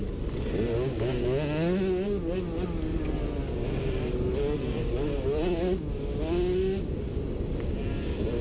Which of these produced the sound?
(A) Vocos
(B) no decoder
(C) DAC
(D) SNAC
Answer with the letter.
B